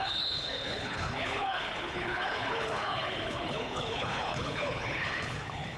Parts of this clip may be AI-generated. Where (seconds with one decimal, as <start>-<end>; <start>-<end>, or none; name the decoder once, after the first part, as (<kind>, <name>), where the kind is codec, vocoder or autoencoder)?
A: 0.0-5.8 (codec, HILCodec)